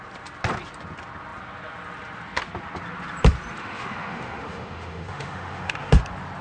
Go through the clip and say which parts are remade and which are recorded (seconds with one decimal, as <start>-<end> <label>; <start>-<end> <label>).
0.0-3.6 recorded; 3.6-6.0 remade; 6.0-6.4 recorded